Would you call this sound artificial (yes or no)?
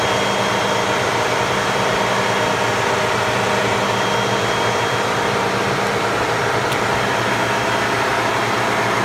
no